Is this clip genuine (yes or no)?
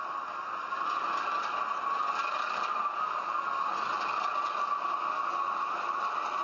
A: yes